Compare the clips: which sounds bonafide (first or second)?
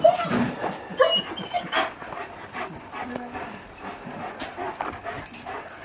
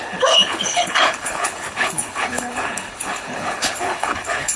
first